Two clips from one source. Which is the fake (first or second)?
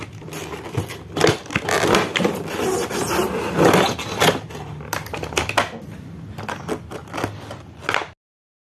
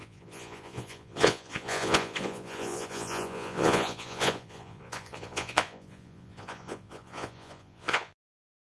second